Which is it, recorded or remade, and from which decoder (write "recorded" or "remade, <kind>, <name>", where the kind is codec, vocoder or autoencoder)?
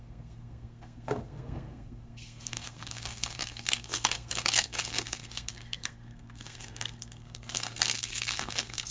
remade, codec, SNAC